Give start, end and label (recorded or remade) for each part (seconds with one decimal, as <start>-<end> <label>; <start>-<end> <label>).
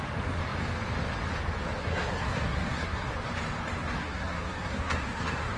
0.0-1.8 recorded; 1.8-3.1 remade; 3.1-4.0 recorded; 4.0-5.6 remade